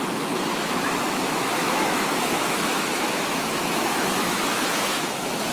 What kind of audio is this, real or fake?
fake